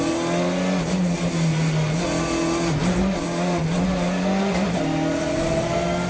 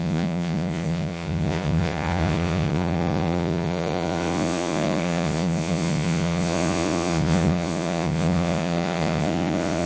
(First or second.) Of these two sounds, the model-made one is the second